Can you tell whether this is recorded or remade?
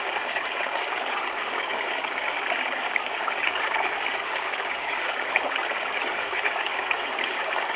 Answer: remade